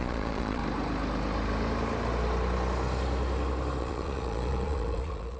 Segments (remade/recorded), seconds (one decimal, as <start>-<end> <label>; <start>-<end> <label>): 0.0-0.6 remade; 0.6-3.8 recorded; 3.8-5.4 remade